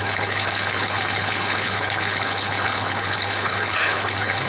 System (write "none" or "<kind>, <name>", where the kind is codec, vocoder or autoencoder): codec, HILCodec